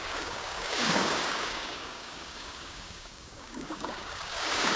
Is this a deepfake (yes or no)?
yes